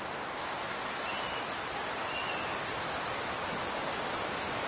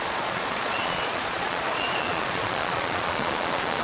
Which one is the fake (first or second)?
second